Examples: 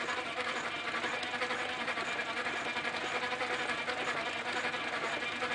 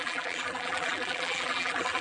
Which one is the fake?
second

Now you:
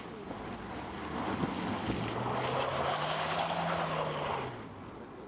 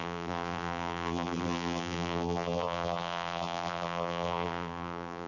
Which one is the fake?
second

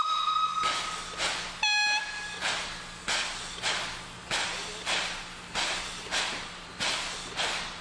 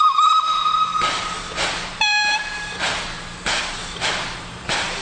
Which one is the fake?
second